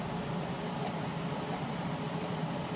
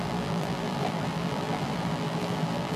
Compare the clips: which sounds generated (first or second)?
second